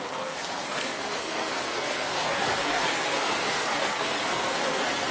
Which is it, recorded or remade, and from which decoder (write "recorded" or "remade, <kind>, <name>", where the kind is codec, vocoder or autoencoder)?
remade, codec, SNAC